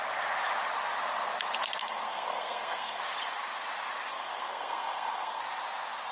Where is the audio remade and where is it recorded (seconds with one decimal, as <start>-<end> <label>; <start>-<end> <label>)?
0.0-1.8 recorded; 1.8-3.0 remade; 3.0-4.1 recorded; 4.1-5.4 remade; 5.4-6.1 recorded